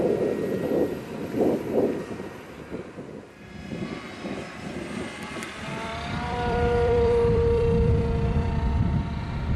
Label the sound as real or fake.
fake